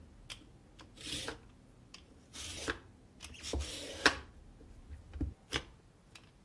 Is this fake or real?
real